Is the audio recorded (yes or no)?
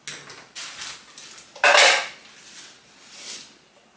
yes